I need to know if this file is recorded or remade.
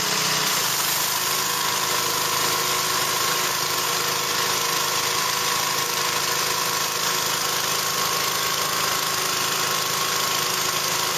recorded